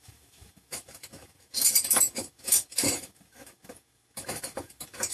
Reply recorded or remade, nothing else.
remade